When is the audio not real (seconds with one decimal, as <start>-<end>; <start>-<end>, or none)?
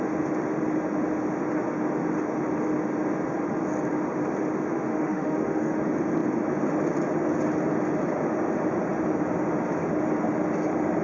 4.9-5.8